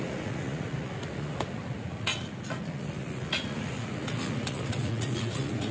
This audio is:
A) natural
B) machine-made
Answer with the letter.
B